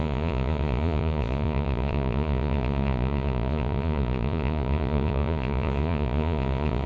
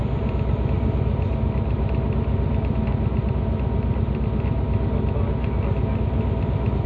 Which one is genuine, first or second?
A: second